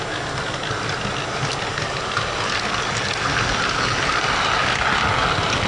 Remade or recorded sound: recorded